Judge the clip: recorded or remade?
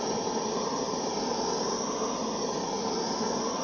recorded